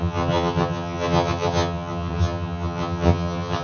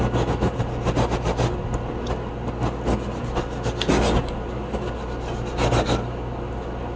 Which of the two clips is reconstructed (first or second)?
first